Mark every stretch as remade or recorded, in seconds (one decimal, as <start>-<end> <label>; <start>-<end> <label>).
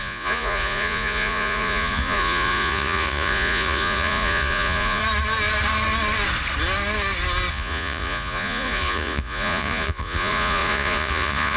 0.0-5.0 remade; 5.0-7.5 recorded; 7.5-11.6 remade